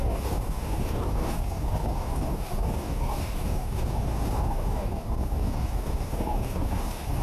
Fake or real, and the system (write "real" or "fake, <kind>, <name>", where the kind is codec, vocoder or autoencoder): fake, codec, DAC